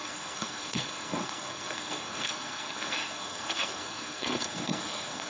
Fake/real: fake